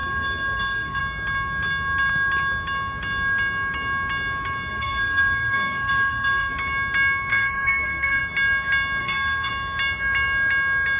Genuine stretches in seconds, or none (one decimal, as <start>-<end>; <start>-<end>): 1.0-4.7; 6.5-7.3; 8.2-9.0; 9.5-11.0